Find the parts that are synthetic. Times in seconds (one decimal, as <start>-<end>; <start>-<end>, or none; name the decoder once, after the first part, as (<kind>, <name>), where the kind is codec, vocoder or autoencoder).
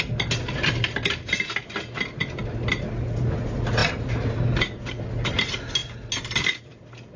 none